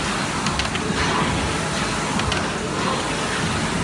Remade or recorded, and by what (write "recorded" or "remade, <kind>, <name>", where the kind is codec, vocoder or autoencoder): recorded